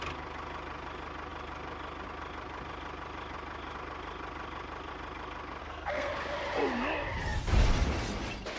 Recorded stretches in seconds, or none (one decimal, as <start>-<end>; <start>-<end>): 0.0-5.6; 6.1-8.6